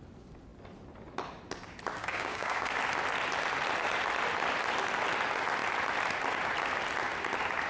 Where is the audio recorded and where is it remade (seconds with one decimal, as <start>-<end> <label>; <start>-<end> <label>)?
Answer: 0.0-2.0 recorded; 2.0-2.7 remade; 2.7-7.7 recorded